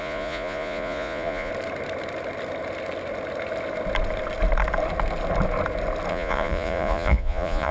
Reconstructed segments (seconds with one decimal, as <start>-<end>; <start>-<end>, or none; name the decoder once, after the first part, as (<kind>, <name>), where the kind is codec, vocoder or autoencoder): 0.0-1.5 (vocoder, Vocos); 6.1-7.7